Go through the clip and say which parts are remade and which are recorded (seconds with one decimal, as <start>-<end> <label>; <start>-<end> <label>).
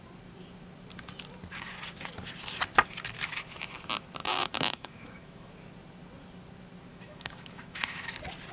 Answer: 0.0-4.2 recorded; 4.2-5.5 remade; 5.5-6.9 recorded; 6.9-8.1 remade; 8.1-8.5 recorded